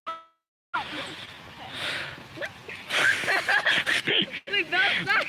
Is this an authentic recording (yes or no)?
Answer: yes